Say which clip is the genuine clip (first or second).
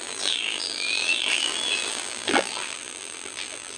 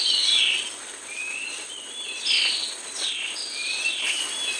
second